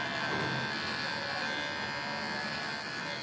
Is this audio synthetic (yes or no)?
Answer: no